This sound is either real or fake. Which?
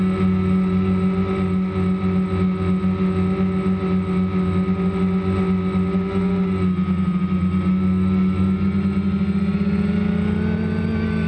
real